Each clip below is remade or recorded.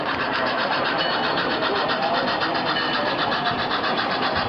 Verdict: remade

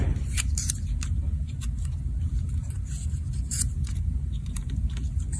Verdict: remade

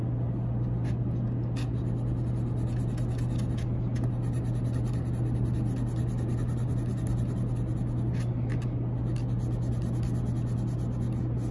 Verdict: recorded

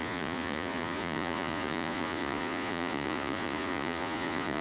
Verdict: remade